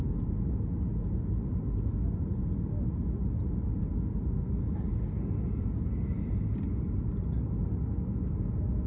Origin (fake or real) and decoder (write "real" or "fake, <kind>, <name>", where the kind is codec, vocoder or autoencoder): real